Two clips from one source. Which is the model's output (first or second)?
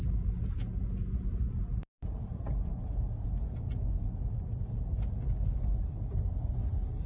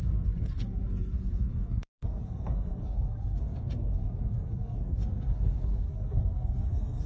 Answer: second